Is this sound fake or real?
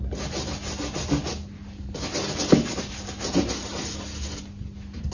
real